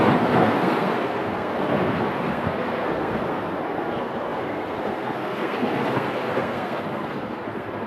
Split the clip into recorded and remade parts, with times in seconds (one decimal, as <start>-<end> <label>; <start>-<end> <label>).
0.0-7.9 remade